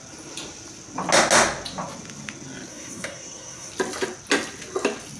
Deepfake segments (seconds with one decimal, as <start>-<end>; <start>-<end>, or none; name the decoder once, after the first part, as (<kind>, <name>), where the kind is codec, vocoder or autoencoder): 2.7-3.7 (codec, SNAC)